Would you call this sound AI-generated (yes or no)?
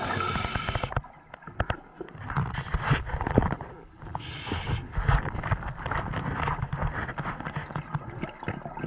no